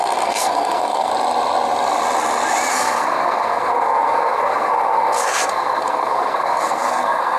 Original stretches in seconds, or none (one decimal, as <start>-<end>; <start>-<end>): 1.1-2.7